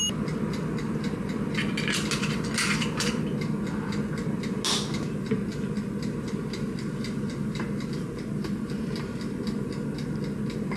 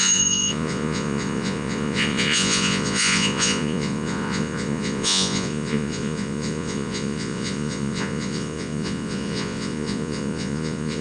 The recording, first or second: first